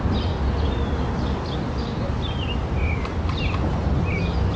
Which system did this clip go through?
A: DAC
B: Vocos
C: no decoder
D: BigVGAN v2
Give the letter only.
C